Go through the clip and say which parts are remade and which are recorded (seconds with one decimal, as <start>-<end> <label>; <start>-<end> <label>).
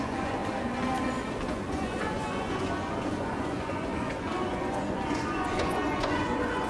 0.0-0.4 remade; 0.4-1.5 recorded; 1.5-6.7 remade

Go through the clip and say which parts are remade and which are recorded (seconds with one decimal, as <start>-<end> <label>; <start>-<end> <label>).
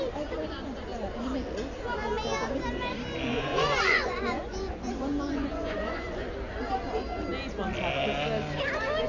0.0-3.3 recorded; 3.3-6.3 remade; 6.3-9.1 recorded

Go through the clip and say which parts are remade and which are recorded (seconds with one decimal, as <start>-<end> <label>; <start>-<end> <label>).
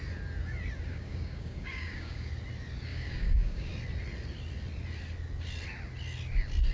0.0-0.9 recorded; 0.9-2.3 remade; 2.3-2.9 recorded; 2.9-3.7 remade; 3.7-6.7 recorded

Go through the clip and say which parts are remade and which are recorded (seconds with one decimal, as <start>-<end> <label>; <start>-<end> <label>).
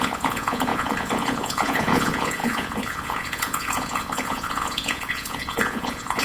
0.0-6.2 remade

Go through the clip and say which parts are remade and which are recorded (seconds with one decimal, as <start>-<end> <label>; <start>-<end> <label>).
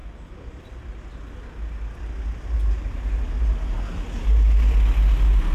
0.0-5.5 recorded